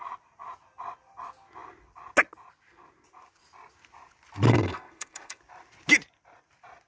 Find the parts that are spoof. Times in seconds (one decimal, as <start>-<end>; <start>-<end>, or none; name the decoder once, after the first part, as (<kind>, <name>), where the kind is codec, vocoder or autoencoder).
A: 4.5-5.4 (codec, SNAC)

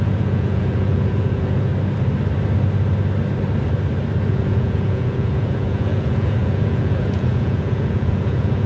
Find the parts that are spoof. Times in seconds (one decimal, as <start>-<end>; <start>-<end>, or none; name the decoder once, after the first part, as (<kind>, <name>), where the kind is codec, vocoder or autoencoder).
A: 0.0-1.7 (vocoder, Vocos); 4.3-8.7

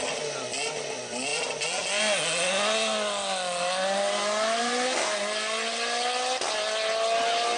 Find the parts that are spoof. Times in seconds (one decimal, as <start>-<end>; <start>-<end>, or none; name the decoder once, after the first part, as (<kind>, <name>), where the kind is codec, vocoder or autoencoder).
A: none

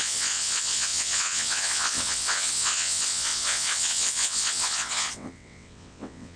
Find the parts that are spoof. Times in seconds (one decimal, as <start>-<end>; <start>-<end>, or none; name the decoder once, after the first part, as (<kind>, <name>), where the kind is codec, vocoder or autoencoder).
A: 0.0-6.4 (vocoder, WaveNeXt)

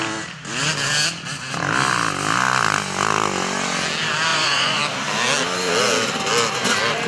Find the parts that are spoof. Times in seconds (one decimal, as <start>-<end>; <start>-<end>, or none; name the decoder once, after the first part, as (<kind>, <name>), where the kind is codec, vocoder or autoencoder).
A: 4.3-4.8 (vocoder, Vocos)

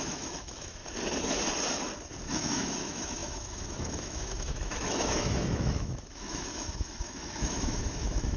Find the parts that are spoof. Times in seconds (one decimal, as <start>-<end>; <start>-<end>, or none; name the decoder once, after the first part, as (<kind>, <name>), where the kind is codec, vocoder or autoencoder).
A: 0.0-0.8 (autoencoder, DAC-VAE); 2.3-8.4